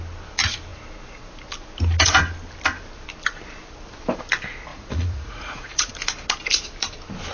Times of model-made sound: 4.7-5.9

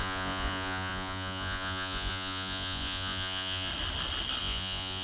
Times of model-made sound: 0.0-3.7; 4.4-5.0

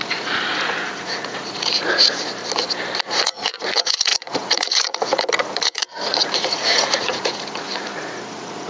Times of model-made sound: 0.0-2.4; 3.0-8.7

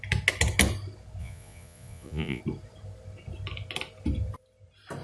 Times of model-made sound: 1.2-2.4